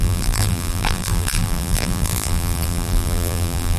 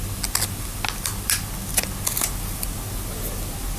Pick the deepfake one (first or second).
first